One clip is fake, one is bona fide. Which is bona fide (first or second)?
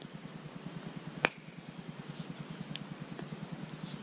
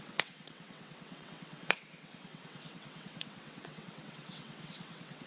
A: first